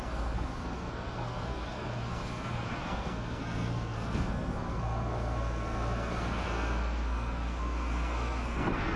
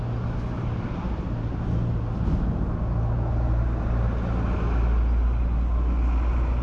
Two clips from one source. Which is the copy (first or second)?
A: first